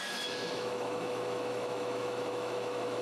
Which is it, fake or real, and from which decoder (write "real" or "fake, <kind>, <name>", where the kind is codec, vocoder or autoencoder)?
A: fake, autoencoder, DAC-VAE